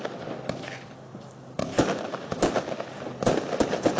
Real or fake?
real